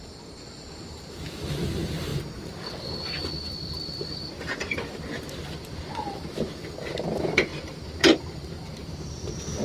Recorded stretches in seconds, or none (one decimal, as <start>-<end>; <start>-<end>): none